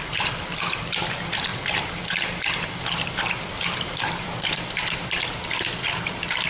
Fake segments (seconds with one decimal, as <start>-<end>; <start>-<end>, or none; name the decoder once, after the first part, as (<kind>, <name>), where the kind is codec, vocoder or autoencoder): 0.0-6.5 (vocoder, BigVGAN v2)